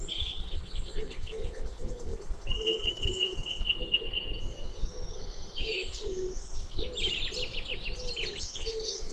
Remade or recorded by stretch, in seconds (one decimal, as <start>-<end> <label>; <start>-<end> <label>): 0.0-6.8 remade; 6.8-8.4 recorded; 8.4-9.1 remade